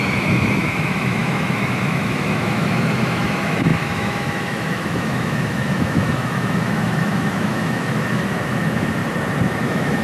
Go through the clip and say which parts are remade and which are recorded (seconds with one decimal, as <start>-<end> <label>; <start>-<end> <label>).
0.0-9.0 remade; 9.0-9.5 recorded; 9.5-10.0 remade